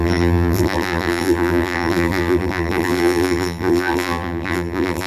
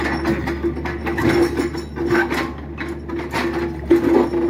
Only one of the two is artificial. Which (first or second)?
first